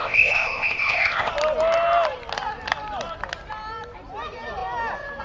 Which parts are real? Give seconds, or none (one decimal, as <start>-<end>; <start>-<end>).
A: 1.3-5.2